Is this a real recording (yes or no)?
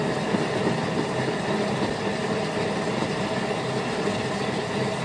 yes